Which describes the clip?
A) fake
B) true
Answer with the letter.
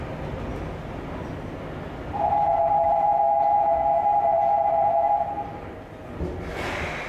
B